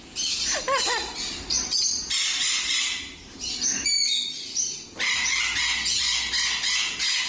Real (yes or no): yes